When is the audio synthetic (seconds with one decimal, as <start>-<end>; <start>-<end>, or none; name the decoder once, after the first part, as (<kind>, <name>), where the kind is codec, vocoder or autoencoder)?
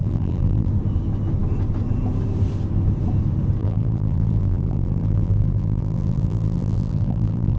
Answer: 0.0-0.7 (vocoder, BigVGAN v2); 3.6-7.6